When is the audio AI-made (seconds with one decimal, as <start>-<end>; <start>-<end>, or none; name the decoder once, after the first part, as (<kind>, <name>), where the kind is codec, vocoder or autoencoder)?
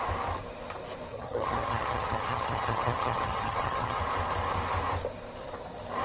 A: 1.1-4.0 (vocoder, HiFi-GAN)